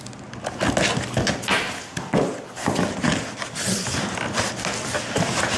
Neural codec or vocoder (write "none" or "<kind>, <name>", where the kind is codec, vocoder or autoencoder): none